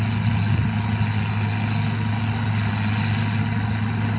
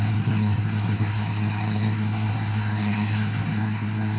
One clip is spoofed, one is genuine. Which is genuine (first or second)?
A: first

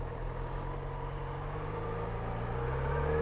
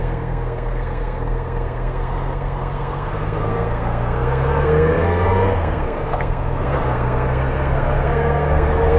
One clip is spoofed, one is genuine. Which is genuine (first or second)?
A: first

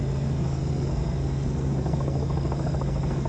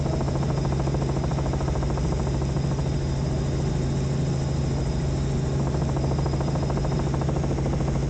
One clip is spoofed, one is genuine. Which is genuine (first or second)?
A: second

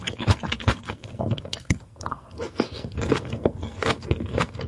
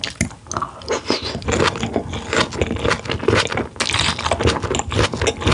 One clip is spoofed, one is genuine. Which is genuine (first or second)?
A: second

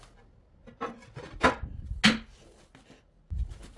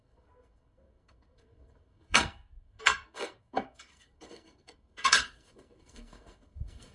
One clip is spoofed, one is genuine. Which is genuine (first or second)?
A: first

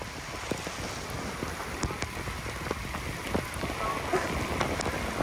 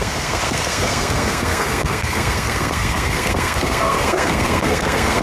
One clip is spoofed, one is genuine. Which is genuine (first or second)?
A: first